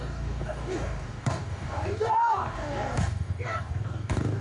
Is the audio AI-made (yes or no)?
yes